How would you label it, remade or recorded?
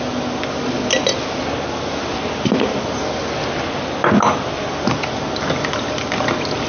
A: recorded